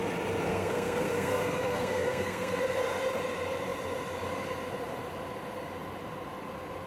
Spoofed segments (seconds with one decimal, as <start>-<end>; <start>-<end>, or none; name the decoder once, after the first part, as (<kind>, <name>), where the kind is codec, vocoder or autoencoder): 0.5-2.6 (codec, SNAC)

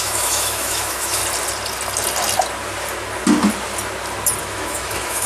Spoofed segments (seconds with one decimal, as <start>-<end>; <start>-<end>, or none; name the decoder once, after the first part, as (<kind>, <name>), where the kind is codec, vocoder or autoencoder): 0.0-1.2 (autoencoder, DAC-VAE); 4.4-5.3

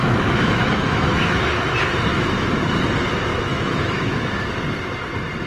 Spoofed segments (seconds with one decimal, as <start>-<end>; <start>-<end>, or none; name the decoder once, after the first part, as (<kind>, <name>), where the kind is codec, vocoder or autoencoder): 0.0-1.6 (autoencoder, DAC-VAE); 2.1-2.6; 3.3-4.4

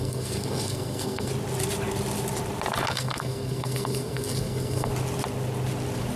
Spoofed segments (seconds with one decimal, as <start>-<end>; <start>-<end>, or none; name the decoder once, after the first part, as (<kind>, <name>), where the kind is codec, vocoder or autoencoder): 0.0-1.3 (codec, SNAC); 2.9-4.9